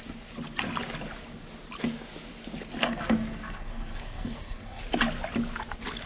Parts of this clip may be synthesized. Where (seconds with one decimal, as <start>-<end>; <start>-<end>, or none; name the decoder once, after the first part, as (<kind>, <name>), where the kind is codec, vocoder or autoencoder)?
2.8-4.8 (codec, SNAC)